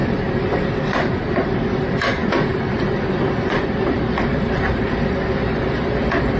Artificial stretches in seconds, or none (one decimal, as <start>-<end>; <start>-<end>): none